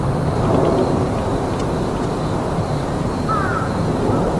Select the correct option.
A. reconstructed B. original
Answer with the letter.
B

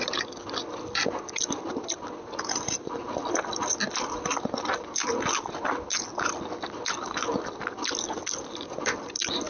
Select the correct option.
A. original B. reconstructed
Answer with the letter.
A